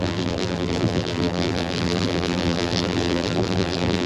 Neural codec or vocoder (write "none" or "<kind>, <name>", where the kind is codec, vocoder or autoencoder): vocoder, BigVGAN v2